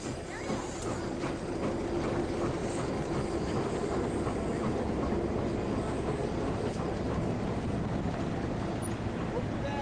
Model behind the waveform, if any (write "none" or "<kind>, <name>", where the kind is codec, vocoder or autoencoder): none